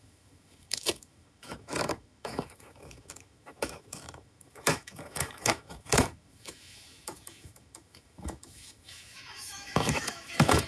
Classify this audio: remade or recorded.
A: remade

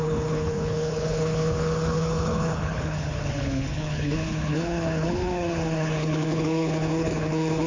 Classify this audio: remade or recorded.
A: remade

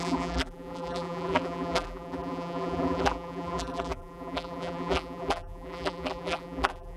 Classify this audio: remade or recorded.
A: remade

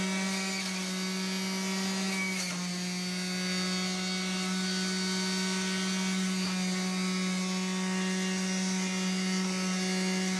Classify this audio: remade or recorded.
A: recorded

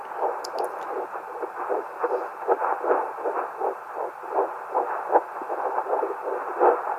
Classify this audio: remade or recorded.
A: recorded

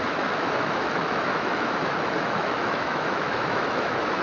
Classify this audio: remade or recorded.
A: remade